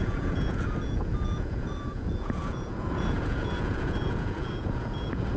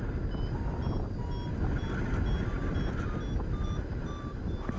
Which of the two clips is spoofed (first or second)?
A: first